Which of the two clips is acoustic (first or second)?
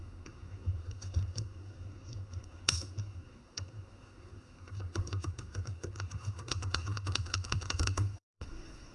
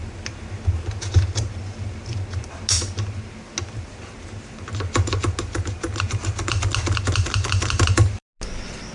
second